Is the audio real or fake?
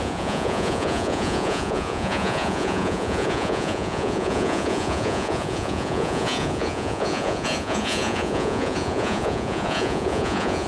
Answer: fake